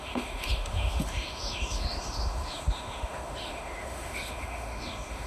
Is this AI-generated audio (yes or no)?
yes